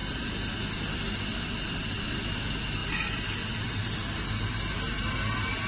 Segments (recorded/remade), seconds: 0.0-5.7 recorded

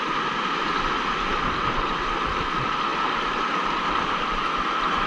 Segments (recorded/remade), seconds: 0.0-5.1 recorded

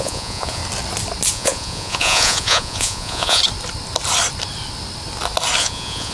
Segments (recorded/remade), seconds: 0.0-0.6 remade; 0.6-1.3 recorded; 1.3-3.4 remade; 3.4-5.6 recorded; 5.6-6.1 remade

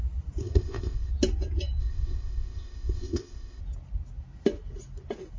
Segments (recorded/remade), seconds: 0.0-0.4 recorded; 0.4-1.1 remade; 1.1-1.8 recorded; 1.8-3.6 remade; 3.6-5.4 recorded

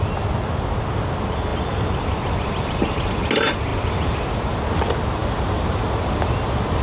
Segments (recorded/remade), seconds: 0.0-1.5 recorded; 1.5-3.1 remade; 3.1-6.8 recorded